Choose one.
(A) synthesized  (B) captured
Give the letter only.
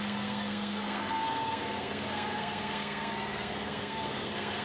A